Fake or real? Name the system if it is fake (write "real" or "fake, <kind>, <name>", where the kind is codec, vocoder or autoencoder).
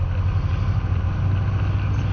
real